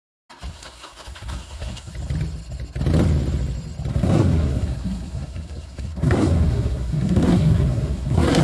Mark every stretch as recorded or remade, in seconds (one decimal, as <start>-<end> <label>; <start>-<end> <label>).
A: 0.0-0.5 recorded; 0.5-1.9 remade; 1.9-3.9 recorded; 3.9-8.4 remade